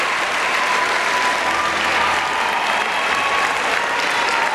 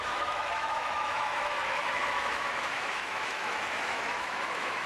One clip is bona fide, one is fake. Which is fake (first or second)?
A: second